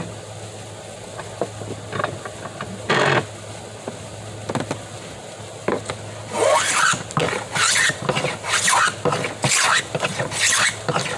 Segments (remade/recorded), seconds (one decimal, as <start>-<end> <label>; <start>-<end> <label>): 0.0-11.2 recorded